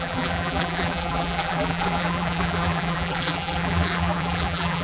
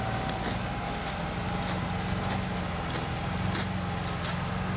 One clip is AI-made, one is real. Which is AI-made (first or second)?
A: first